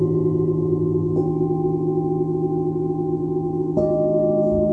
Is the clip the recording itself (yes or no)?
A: yes